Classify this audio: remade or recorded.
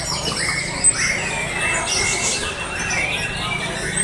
recorded